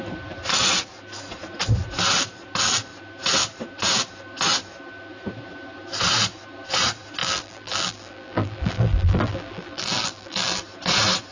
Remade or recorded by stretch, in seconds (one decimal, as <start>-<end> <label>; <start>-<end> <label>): 0.0-7.2 recorded; 7.2-10.6 remade; 10.6-11.3 recorded